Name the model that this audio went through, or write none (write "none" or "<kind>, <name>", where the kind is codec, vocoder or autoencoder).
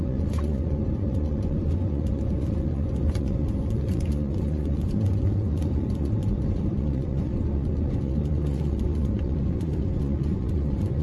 vocoder, Vocos